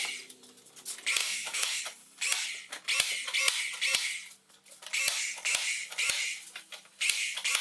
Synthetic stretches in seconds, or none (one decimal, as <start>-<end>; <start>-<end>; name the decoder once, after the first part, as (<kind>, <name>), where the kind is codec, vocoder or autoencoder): 1.2-1.8 (autoencoder, DAC-VAE)